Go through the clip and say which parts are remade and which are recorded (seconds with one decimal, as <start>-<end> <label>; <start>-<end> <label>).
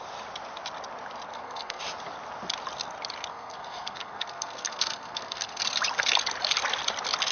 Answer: 0.0-1.3 recorded; 1.3-1.8 remade; 1.8-3.3 recorded; 3.3-5.6 remade; 5.6-7.3 recorded